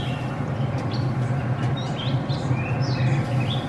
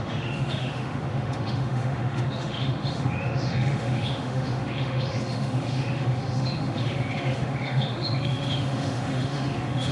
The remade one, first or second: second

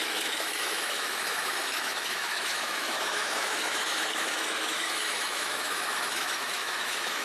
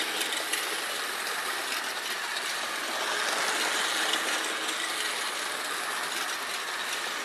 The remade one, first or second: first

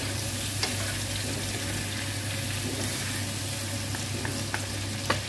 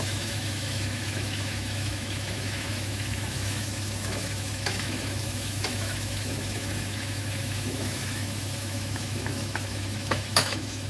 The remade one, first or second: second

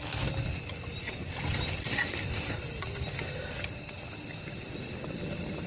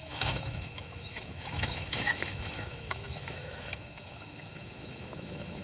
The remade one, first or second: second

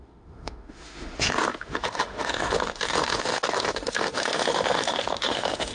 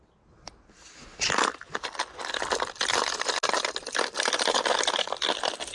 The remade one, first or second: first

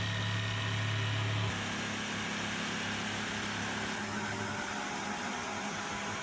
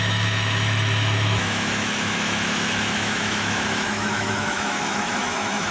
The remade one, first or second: second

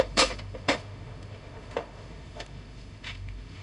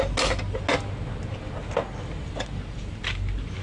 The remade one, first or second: first